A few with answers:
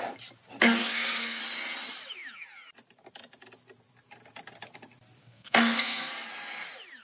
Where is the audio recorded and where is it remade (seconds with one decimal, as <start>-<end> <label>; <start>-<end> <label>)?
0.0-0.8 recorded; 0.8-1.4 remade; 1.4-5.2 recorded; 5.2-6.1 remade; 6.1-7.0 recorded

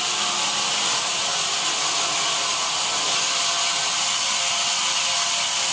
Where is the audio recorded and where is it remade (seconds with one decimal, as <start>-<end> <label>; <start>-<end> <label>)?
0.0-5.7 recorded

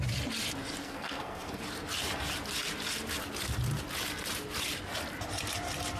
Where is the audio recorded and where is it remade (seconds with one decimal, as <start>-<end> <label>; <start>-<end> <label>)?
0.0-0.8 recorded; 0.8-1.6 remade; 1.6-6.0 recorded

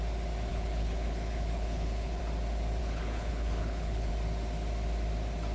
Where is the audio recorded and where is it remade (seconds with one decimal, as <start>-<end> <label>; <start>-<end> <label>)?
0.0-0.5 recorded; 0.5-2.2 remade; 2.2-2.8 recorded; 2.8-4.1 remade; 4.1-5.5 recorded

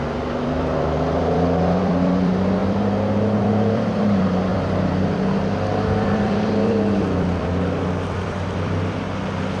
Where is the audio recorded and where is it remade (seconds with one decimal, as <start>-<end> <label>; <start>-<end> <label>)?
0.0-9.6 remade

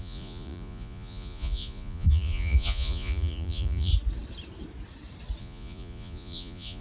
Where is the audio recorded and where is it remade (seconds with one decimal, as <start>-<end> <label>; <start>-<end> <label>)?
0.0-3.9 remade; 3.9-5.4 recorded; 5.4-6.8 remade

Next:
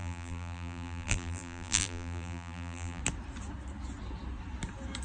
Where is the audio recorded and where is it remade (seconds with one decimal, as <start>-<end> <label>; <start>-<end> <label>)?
0.0-3.0 remade; 3.0-5.0 recorded

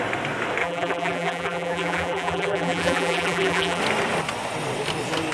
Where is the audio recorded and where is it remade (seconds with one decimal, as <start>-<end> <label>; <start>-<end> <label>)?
0.0-0.6 recorded; 0.6-3.8 remade; 3.8-5.3 recorded